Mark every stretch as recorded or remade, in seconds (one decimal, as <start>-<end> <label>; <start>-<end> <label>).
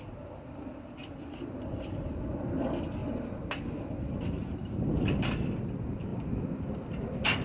0.0-7.4 recorded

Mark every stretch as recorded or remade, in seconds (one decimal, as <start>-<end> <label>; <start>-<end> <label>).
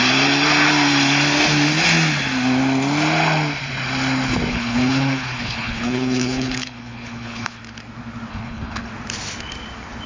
0.0-4.5 recorded; 4.5-7.6 remade; 7.6-8.3 recorded; 8.3-8.9 remade; 8.9-10.1 recorded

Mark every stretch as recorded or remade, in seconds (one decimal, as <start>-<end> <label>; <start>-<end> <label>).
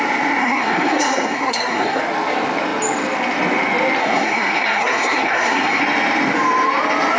0.0-0.4 recorded; 0.4-2.0 remade; 2.0-4.0 recorded; 4.0-5.8 remade; 5.8-7.2 recorded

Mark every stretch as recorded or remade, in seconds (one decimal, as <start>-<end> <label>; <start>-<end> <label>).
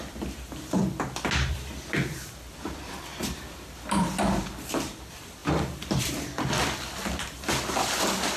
0.0-0.8 remade; 0.8-1.5 recorded; 1.5-3.1 remade; 3.1-4.9 recorded; 4.9-8.4 remade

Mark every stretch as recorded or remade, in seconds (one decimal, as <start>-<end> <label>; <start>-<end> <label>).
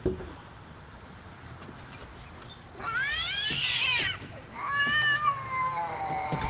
0.0-2.0 remade; 2.0-3.1 recorded; 3.1-6.5 remade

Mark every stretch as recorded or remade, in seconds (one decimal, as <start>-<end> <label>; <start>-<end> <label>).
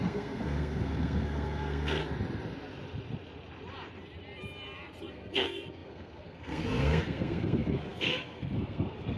0.0-2.0 remade; 2.0-5.1 recorded; 5.1-9.2 remade